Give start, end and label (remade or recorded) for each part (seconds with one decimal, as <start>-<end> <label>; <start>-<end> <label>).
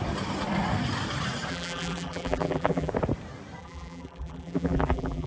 0.0-1.5 recorded; 1.5-2.9 remade; 2.9-3.6 recorded; 3.6-5.3 remade